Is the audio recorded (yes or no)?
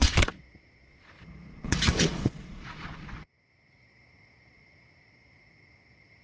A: no